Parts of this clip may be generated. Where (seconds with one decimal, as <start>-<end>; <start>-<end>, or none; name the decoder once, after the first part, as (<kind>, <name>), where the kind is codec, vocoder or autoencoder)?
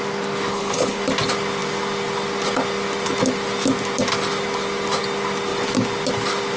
0.5-1.0 (codec, HILCodec)